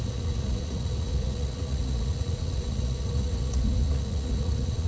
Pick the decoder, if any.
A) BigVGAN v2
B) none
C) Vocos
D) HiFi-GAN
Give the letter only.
C